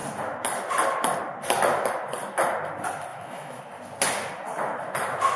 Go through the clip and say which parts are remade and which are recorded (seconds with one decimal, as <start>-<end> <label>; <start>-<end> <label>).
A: 0.0-3.1 recorded; 3.1-3.6 remade; 3.6-5.4 recorded